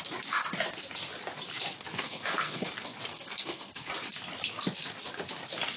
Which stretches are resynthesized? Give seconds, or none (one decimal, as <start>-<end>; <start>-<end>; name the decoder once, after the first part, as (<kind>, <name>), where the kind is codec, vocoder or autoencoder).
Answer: 1.9-2.7 (codec, SNAC); 3.1-3.9